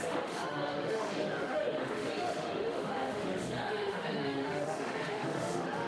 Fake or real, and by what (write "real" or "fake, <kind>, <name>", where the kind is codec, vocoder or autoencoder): fake, autoencoder, DAC-VAE